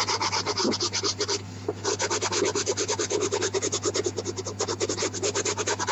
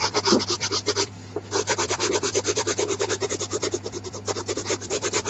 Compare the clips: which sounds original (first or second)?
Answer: first